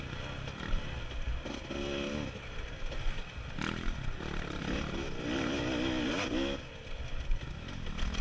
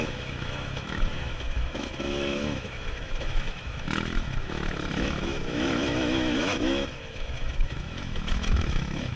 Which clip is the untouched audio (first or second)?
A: first